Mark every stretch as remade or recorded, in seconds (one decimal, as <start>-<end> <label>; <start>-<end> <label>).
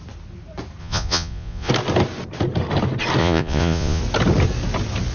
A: 0.0-0.8 recorded; 0.8-1.7 remade; 1.7-3.2 recorded; 3.2-4.0 remade; 4.0-5.1 recorded